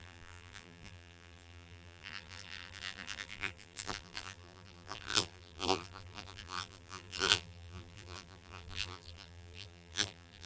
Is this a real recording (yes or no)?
no